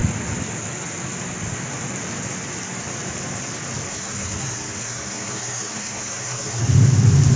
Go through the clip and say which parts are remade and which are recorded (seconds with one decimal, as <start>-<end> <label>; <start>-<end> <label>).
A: 0.0-3.9 recorded; 3.9-6.6 remade; 6.6-7.4 recorded

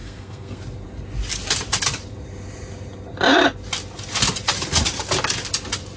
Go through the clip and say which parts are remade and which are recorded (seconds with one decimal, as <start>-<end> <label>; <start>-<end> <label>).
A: 0.0-0.6 remade; 0.6-6.0 recorded

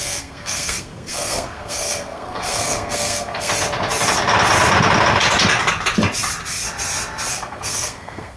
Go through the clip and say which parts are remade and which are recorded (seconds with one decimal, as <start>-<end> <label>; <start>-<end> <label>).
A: 0.0-3.5 remade; 3.5-7.3 recorded; 7.3-8.4 remade

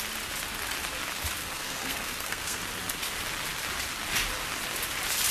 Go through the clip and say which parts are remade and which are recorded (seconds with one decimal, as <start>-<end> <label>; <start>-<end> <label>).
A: 0.0-1.4 recorded; 1.4-2.6 remade; 2.6-5.3 recorded